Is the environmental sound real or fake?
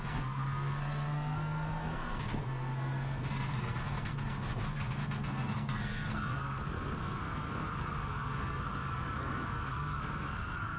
fake